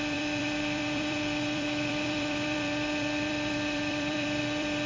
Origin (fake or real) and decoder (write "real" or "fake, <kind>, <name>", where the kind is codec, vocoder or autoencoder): fake, vocoder, BigVGAN v2